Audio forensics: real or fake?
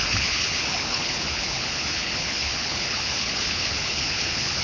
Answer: fake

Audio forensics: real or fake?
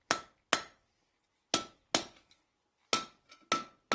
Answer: real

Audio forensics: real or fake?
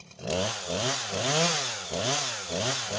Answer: real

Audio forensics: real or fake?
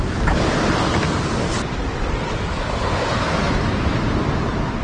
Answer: real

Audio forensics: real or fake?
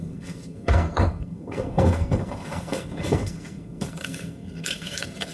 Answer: fake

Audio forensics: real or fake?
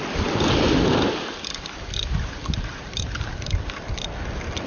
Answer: real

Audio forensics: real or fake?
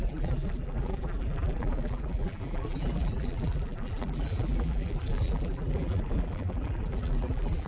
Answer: fake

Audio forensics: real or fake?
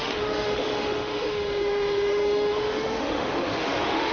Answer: fake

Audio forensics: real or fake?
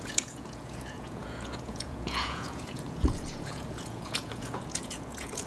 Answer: fake